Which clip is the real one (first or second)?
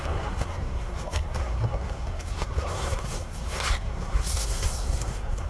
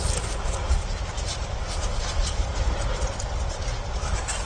second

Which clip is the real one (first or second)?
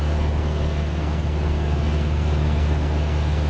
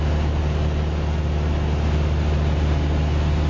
second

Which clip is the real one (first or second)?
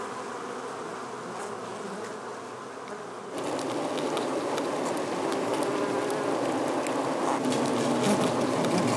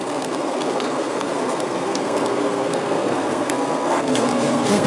first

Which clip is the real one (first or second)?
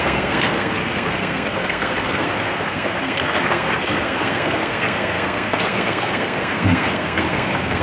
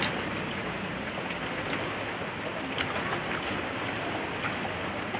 second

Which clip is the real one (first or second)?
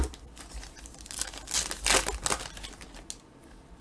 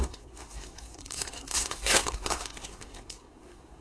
first